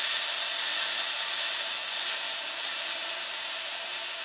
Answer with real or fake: real